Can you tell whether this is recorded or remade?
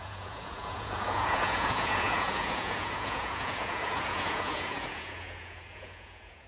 remade